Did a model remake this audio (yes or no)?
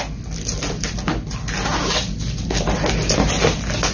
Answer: no